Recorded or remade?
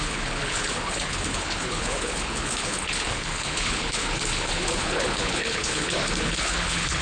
remade